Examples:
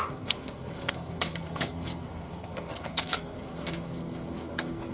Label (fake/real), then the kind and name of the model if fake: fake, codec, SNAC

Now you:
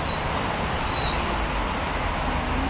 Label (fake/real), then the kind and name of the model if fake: real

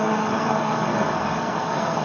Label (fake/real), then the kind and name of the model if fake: fake, codec, SNAC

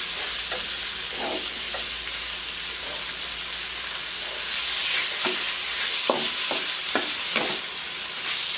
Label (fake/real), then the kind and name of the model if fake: real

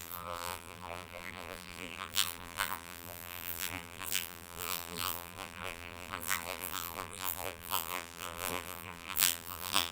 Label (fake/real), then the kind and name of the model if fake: fake, vocoder, BigVGAN v2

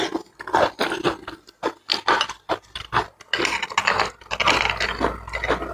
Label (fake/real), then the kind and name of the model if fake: real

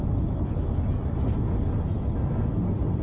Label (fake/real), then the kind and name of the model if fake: real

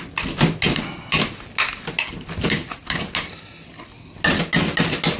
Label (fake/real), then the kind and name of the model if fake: real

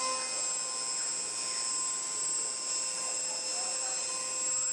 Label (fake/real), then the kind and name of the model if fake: real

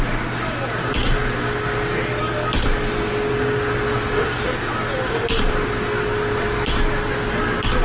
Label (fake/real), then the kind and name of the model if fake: real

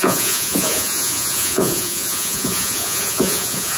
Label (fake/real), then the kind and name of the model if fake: fake, vocoder, Vocos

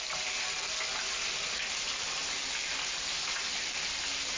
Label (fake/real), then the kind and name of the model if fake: real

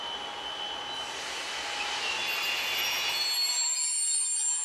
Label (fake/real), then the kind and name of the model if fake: real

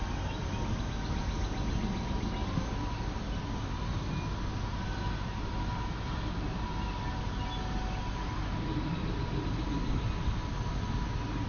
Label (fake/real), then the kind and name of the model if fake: real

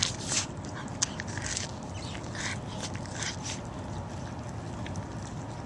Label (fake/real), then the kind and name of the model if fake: real